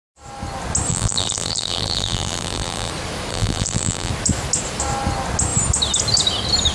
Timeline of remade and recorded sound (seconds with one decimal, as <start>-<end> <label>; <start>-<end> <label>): 0.0-0.9 recorded; 0.9-2.9 remade; 2.9-3.3 recorded; 3.3-4.1 remade; 4.1-6.7 recorded